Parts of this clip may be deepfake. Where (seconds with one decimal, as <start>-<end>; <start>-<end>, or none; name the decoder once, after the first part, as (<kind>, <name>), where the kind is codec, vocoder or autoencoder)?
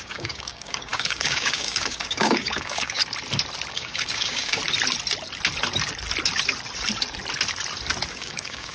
0.0-3.0 (codec, DAC); 3.7-4.6; 8.1-8.7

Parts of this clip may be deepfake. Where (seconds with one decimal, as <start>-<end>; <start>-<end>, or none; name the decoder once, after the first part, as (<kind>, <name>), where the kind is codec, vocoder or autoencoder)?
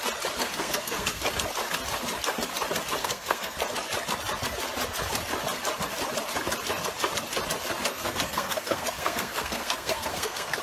0.4-1.2 (codec, SNAC); 3.0-3.6; 7.9-10.6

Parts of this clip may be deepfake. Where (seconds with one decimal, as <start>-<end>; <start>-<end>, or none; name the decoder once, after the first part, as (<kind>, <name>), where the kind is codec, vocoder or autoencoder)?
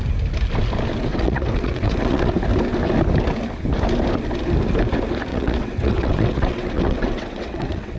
1.1-2.3 (vocoder, WaveNeXt); 5.3-8.0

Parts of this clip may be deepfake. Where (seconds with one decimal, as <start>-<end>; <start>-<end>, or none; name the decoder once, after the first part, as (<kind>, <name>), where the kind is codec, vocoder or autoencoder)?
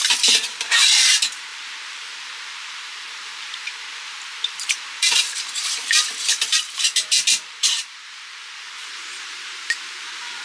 0.0-10.4 (vocoder, BigVGAN v2)